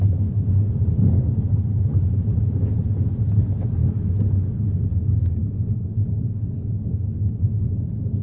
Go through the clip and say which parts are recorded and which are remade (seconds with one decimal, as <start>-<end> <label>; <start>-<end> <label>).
0.0-6.0 recorded; 6.0-7.2 remade; 7.2-8.2 recorded